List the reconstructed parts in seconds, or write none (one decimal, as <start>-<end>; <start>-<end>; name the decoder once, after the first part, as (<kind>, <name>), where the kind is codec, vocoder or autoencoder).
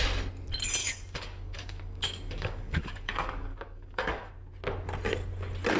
0.8-4.3 (codec, DAC)